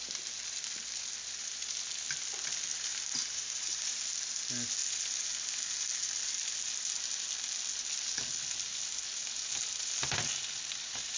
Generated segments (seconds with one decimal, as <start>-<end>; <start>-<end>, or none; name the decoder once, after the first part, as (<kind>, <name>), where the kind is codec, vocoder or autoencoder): 2.9-4.0 (vocoder, BigVGAN v2)